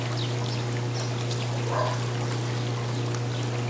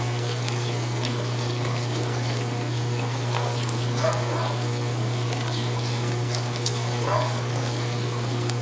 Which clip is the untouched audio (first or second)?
first